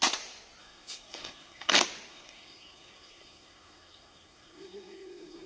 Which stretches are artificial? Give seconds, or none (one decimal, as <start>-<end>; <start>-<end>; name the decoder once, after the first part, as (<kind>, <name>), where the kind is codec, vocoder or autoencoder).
0.6-1.7 (codec, SNAC); 2.1-5.5